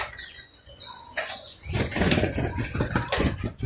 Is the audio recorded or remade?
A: remade